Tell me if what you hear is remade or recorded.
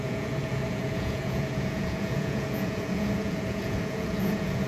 remade